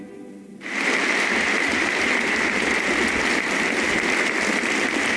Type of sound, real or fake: real